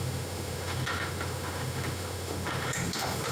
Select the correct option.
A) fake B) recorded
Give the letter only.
A